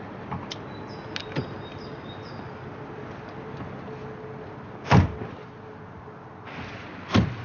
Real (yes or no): yes